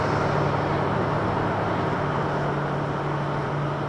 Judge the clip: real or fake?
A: real